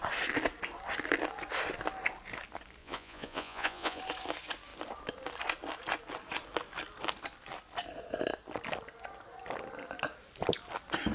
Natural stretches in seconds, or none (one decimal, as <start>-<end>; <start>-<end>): 0.0-2.8; 4.0-11.1